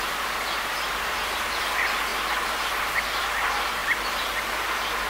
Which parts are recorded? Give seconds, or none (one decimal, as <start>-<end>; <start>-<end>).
0.0-5.1